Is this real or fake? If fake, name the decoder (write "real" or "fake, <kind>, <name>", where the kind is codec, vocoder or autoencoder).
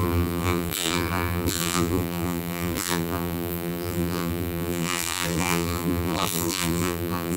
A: fake, vocoder, BigVGAN v2